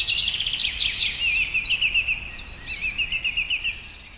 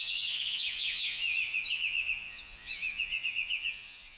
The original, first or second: first